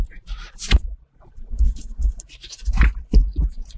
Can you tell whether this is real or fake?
fake